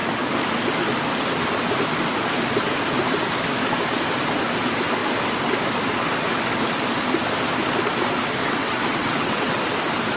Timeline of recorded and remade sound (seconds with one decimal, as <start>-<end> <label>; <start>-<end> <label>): 0.0-8.4 recorded; 8.4-9.6 remade; 9.6-10.2 recorded